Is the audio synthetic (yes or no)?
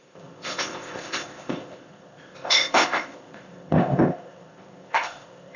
yes